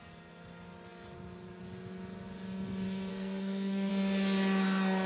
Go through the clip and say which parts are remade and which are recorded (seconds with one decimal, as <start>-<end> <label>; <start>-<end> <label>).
0.0-3.1 recorded; 3.1-3.9 remade; 3.9-5.1 recorded